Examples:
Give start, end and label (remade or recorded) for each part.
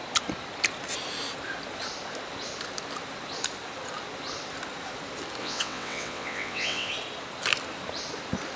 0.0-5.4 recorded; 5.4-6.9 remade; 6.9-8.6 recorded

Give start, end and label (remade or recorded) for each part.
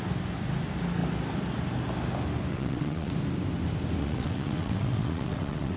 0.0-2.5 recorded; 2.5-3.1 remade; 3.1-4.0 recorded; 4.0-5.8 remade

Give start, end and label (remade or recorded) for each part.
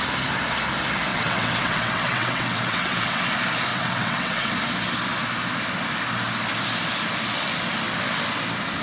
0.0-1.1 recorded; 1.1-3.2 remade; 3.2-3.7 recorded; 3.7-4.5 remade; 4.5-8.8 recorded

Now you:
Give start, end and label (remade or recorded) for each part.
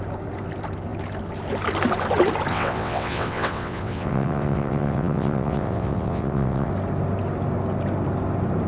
0.0-2.5 recorded; 2.5-6.7 remade; 6.7-8.7 recorded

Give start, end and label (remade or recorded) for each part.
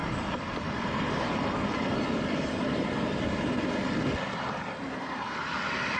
0.0-6.0 recorded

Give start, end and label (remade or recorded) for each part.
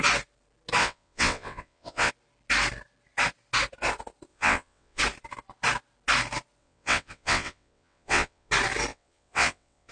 0.0-0.8 recorded; 0.8-2.1 remade; 2.1-4.3 recorded; 4.3-5.0 remade; 5.0-6.6 recorded; 6.6-8.5 remade; 8.5-8.9 recorded; 8.9-9.9 remade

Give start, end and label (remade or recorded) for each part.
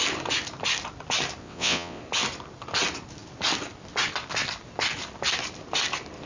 0.0-1.4 recorded; 1.4-2.0 remade; 2.0-6.3 recorded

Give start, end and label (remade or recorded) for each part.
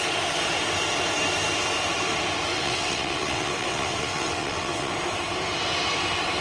0.0-2.5 recorded; 2.5-4.9 remade; 4.9-6.4 recorded